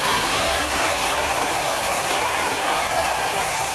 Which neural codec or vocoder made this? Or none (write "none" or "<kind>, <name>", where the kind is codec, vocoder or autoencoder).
codec, SNAC